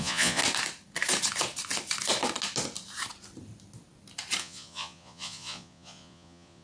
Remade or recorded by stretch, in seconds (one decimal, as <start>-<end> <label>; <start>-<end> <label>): 0.0-0.4 remade; 0.4-4.4 recorded; 4.4-6.6 remade